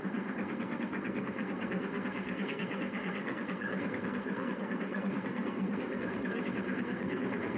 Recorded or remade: remade